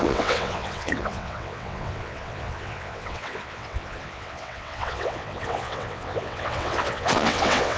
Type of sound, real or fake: fake